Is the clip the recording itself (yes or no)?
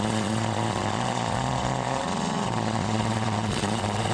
no